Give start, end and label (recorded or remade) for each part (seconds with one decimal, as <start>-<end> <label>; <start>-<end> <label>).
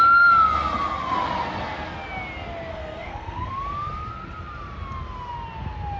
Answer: 0.0-2.7 recorded; 2.7-3.5 remade; 3.5-6.0 recorded